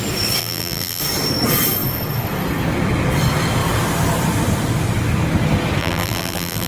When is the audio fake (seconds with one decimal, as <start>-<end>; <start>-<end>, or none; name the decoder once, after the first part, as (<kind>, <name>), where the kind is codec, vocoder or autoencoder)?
0.4-1.0 (vocoder, BigVGAN v2); 5.8-6.7